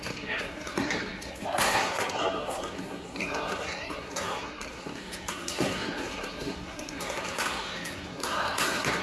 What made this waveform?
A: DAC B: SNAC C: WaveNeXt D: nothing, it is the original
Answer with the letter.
B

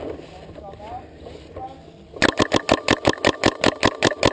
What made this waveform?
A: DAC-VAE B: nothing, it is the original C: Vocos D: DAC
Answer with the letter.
B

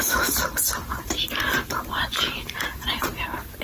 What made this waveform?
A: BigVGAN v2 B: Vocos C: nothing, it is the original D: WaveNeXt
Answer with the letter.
A